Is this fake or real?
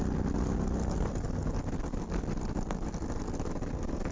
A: real